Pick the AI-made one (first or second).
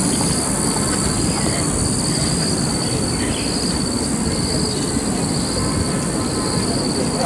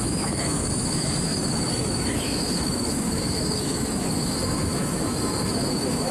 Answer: second